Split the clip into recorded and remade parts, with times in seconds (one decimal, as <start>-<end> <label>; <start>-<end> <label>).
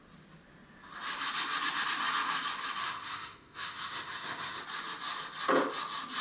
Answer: 0.0-2.8 recorded; 2.8-4.6 remade; 4.6-6.2 recorded